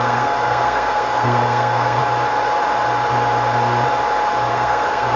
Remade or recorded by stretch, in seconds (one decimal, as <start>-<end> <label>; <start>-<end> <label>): 0.0-2.0 remade; 2.0-4.5 recorded; 4.5-5.2 remade